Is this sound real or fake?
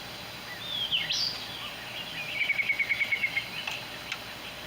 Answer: real